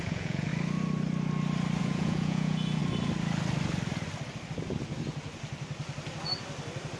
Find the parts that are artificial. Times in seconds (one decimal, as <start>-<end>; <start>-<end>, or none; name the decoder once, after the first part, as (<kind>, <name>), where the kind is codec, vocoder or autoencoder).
0.0-0.5 (vocoder, Vocos); 1.8-2.8